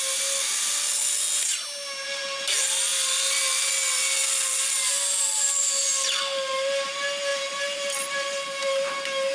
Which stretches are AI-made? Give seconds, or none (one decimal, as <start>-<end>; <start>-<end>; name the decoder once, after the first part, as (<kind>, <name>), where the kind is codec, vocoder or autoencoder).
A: 7.3-8.9 (vocoder, BigVGAN v2)